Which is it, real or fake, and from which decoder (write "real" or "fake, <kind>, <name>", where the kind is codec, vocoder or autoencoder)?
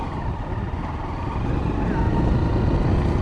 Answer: real